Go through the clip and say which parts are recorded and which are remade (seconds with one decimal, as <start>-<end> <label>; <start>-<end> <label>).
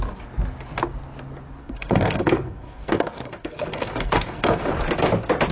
0.0-1.6 recorded; 1.6-4.7 remade; 4.7-5.5 recorded